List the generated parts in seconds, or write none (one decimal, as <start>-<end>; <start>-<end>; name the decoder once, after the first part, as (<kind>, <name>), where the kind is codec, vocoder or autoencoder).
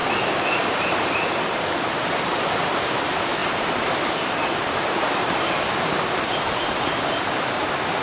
0.0-1.3 (vocoder, BigVGAN v2); 3.4-7.5